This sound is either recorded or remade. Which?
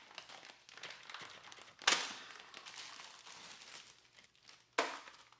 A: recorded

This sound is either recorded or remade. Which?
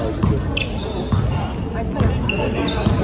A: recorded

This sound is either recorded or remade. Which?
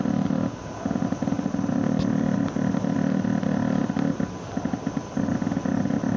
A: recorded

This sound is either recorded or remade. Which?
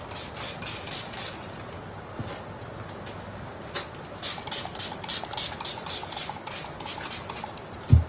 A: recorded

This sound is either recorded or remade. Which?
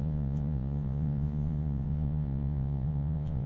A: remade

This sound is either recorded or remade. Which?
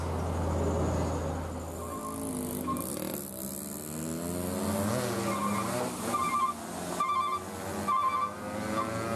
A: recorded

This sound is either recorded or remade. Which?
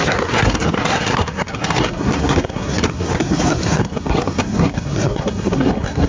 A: remade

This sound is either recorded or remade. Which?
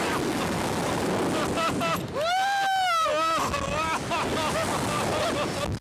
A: recorded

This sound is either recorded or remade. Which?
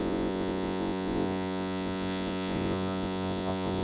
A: remade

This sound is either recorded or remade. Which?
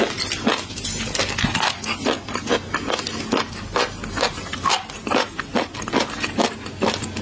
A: recorded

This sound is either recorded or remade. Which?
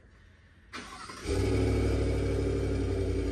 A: recorded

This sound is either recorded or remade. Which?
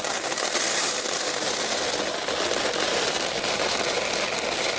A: recorded